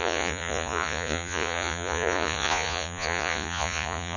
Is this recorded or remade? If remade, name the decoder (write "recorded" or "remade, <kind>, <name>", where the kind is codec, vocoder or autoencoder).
remade, vocoder, Vocos